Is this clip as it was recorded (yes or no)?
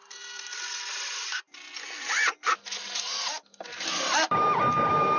yes